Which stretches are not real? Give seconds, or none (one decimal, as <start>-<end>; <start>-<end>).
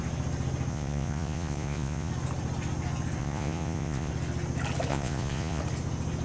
0.7-2.1; 3.2-4.1; 4.9-5.6